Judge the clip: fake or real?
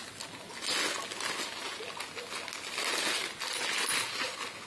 real